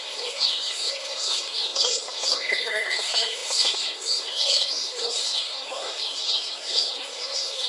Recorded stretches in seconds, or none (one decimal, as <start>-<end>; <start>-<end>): none